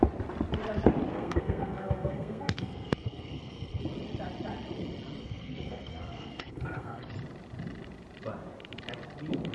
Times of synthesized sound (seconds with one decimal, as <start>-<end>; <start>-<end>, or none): 1.1-3.8; 5.2-7.1